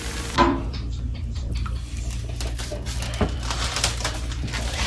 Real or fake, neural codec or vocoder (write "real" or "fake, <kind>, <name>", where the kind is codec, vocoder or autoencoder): fake, vocoder, BigVGAN v2